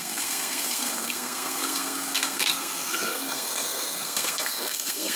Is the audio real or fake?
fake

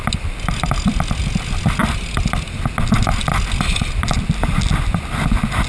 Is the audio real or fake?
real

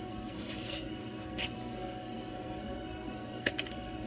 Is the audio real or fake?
fake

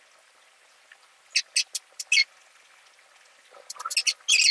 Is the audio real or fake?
real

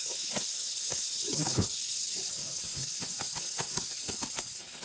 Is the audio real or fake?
fake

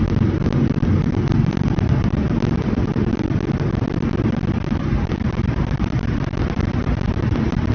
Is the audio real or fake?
real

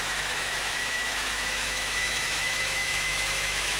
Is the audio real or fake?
fake